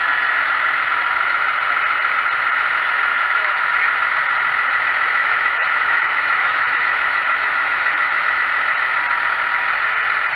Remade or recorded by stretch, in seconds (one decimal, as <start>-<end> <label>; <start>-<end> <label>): 0.0-3.1 recorded; 3.1-3.7 remade; 3.7-5.2 recorded; 5.2-8.4 remade; 8.4-10.4 recorded